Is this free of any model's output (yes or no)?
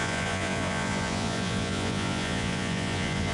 no